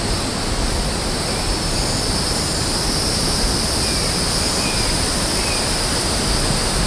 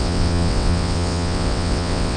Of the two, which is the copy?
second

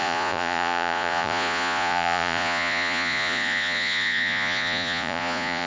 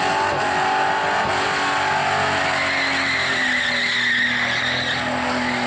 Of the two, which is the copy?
first